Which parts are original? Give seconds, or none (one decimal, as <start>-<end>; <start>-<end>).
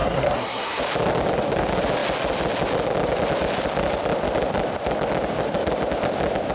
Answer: 0.8-6.5